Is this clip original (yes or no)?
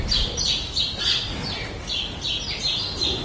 yes